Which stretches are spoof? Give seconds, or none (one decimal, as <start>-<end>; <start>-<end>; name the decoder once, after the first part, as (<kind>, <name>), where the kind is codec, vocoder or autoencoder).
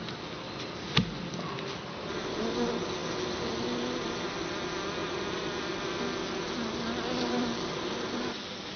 none